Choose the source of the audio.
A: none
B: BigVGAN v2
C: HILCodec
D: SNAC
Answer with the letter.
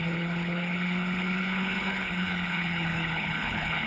C